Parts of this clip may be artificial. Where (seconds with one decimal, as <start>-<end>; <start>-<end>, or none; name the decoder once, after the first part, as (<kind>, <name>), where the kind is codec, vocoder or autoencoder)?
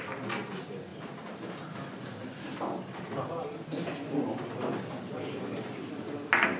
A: none